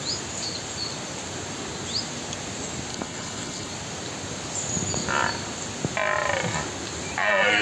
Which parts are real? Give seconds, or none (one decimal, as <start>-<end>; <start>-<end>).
0.0-2.9; 3.7-7.6